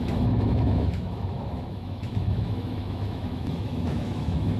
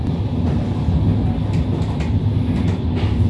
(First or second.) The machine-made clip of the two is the first